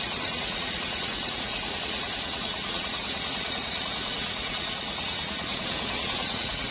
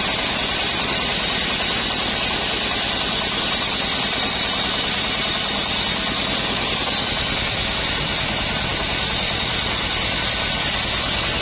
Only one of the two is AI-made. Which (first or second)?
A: first